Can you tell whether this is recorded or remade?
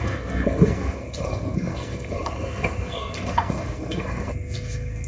remade